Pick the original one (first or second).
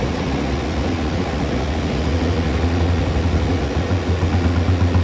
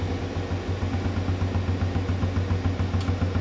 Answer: second